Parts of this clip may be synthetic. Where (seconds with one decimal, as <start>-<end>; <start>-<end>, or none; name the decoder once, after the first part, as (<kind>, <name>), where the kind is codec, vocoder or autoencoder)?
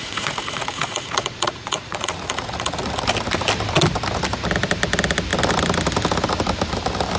0.0-3.0 (vocoder, Vocos)